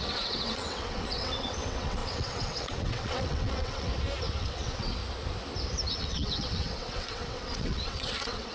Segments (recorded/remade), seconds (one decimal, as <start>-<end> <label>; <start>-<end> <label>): 0.0-3.9 remade; 3.9-4.4 recorded; 4.4-5.0 remade; 5.0-6.0 recorded; 6.0-8.5 remade